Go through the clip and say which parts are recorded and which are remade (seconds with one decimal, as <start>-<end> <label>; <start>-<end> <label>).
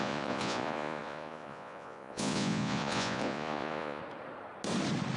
0.0-4.0 remade; 4.0-5.2 recorded